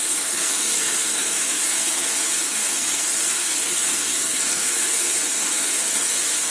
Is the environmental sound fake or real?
fake